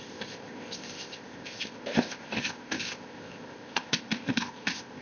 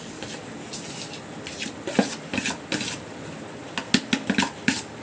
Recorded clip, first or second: second